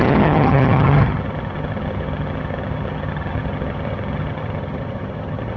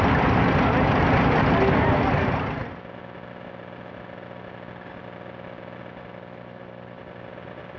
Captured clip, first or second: second